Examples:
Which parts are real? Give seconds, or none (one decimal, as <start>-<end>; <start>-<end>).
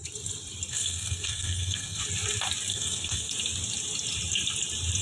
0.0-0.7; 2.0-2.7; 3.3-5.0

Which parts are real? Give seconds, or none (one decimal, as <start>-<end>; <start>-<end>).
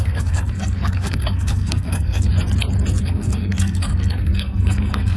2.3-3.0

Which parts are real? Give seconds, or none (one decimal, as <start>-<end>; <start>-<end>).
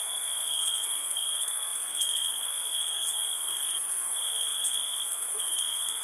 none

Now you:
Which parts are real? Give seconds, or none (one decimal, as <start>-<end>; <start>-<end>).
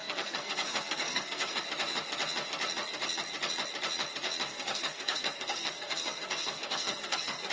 1.6-4.5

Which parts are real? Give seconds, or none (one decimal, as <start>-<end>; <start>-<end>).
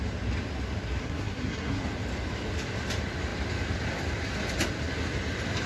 0.0-1.0; 1.8-5.7